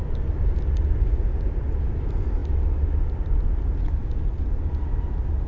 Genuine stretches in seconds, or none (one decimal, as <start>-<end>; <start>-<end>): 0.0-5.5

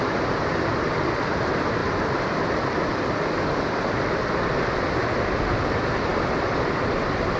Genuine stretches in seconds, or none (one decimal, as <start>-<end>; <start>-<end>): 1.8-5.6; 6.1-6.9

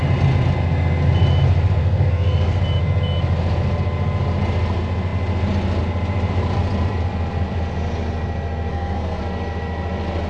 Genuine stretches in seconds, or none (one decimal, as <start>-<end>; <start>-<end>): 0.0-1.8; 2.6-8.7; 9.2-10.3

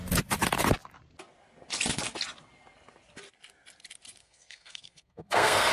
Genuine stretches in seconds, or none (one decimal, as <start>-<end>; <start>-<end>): 0.0-4.2